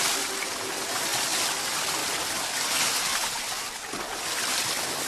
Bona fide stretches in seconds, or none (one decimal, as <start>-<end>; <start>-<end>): 0.0-5.1